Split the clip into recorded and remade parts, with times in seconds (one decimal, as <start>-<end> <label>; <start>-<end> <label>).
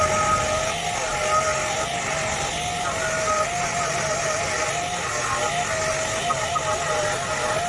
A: 0.0-7.7 recorded